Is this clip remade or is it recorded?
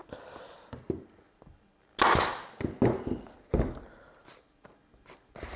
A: recorded